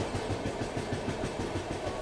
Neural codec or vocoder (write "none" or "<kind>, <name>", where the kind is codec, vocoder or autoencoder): none